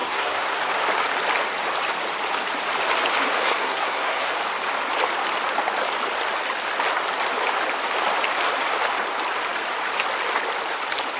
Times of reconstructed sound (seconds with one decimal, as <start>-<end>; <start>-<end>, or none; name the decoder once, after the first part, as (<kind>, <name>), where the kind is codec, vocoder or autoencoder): 0.0-0.6 (codec, SNAC); 3.4-4.3